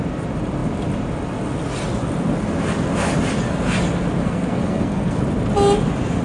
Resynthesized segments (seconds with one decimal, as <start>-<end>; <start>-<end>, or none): 4.2-5.2